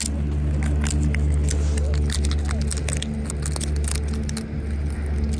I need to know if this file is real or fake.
real